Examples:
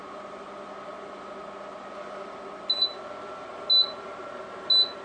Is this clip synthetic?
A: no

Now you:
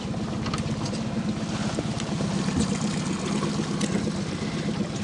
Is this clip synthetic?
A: no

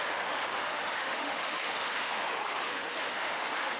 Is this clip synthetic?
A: yes